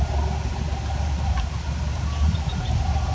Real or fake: real